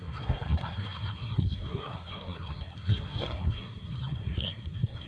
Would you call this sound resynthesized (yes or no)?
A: yes